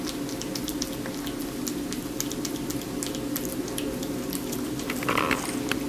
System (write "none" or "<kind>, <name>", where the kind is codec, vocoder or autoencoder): none